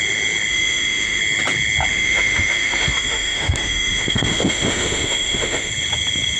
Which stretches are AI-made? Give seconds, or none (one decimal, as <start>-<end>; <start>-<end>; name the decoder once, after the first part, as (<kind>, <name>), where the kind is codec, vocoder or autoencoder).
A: 0.5-1.2 (autoencoder, DAC-VAE); 1.9-5.7